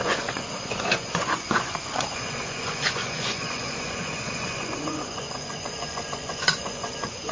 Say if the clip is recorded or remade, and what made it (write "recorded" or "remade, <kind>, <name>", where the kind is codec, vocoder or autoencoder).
remade, vocoder, Vocos